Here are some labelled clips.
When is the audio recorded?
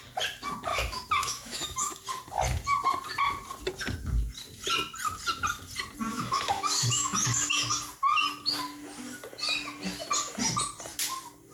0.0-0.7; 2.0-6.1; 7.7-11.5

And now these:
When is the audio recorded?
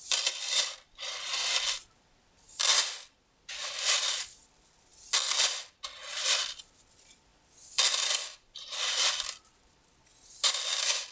4.9-6.6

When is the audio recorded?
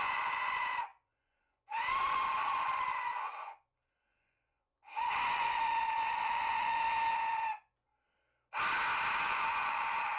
7.9-9.2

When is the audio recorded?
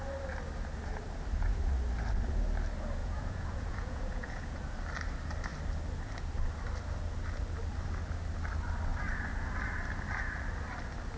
0.0-3.0; 4.6-11.2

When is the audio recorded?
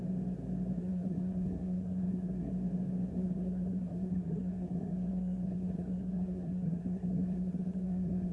0.0-0.8; 2.5-3.1